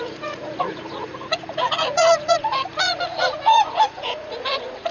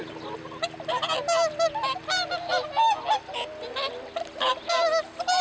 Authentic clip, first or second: second